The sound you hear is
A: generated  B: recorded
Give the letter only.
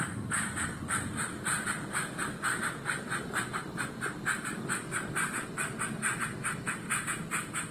B